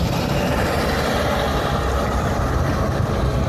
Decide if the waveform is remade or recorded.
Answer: recorded